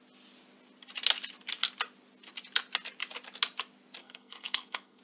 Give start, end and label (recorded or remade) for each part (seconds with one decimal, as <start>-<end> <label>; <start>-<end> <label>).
0.0-4.0 recorded; 4.0-5.0 remade